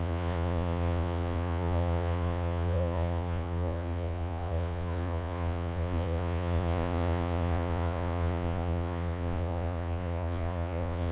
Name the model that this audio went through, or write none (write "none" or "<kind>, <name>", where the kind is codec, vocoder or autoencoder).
vocoder, Vocos